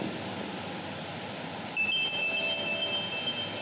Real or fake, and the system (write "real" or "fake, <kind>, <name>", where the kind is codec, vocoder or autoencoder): real